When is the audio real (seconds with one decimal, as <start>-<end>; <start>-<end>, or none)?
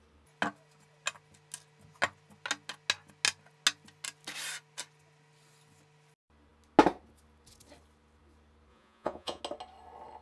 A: 0.0-8.7; 9.4-10.2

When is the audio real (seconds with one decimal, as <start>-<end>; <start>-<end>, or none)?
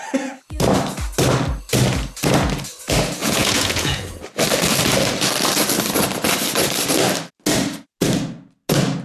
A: 0.0-3.2; 4.0-9.0